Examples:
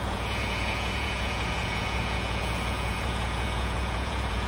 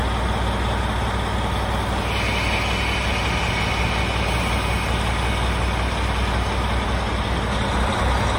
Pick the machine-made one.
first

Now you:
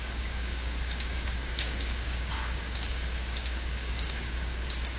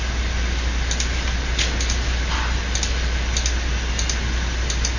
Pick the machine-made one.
first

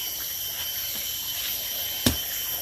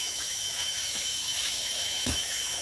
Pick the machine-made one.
second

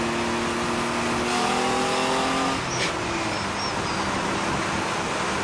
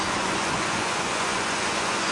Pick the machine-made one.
second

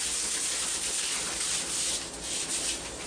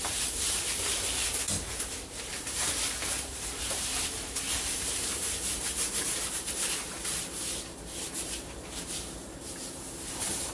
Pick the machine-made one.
second